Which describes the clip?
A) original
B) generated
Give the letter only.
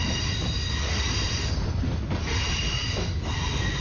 A